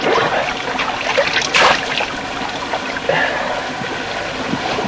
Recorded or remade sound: recorded